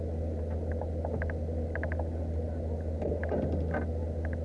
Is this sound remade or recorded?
recorded